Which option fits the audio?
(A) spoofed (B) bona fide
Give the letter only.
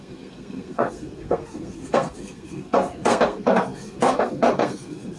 A